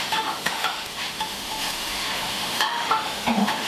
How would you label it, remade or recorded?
remade